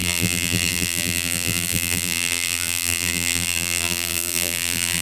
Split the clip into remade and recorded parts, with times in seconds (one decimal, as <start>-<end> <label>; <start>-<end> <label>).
0.0-5.0 remade